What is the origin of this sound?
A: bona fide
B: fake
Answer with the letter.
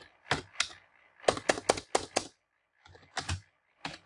A